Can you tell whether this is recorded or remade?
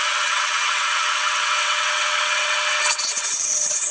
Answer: remade